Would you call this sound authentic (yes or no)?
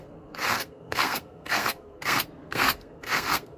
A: no